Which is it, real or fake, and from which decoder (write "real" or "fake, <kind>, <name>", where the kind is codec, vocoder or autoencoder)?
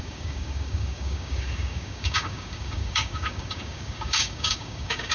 fake, codec, DAC